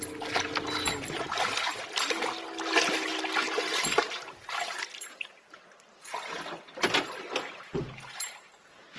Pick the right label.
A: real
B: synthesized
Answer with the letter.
A